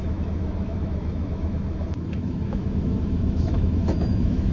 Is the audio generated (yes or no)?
yes